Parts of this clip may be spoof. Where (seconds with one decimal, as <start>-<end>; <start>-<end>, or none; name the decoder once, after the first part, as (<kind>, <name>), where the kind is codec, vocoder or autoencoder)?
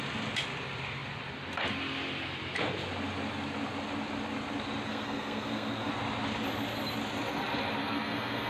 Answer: 4.9-5.9 (codec, SNAC); 7.8-8.5